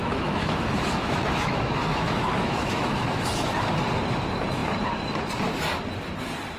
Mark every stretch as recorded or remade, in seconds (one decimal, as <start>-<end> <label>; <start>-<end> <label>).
0.0-3.7 remade; 3.7-6.6 recorded